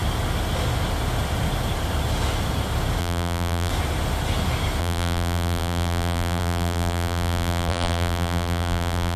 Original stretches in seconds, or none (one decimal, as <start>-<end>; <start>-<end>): 0.0-3.0; 3.7-4.8

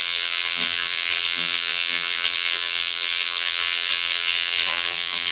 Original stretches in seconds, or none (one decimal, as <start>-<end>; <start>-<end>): none

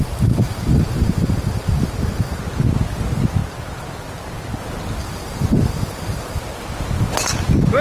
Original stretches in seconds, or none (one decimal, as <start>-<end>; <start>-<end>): 2.4-5.0; 6.4-7.8

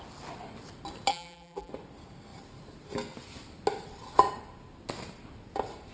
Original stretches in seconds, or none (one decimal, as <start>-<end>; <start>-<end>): 0.0-1.1; 1.7-5.9

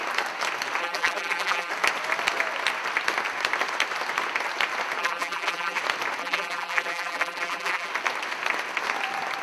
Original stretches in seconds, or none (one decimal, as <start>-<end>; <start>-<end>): 0.0-0.8; 1.7-5.0; 5.8-6.2; 7.9-9.4

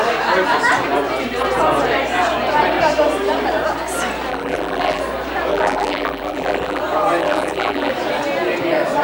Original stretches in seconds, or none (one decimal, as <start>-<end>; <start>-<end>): 0.0-4.3; 5.0-5.5; 6.8-7.2; 7.9-9.0